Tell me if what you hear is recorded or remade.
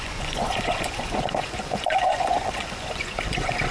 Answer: remade